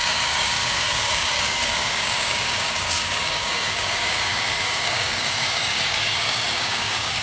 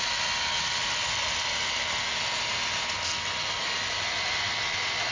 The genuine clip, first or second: second